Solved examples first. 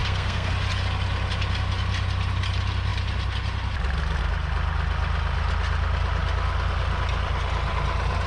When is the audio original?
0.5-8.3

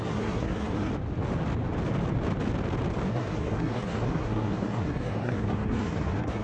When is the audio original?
0.9-3.1

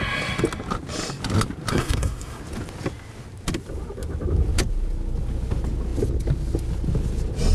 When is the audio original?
0.0-1.7; 2.4-7.5

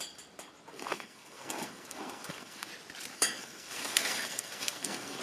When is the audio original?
0.0-0.7; 2.7-3.1